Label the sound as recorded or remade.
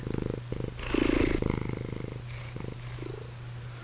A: recorded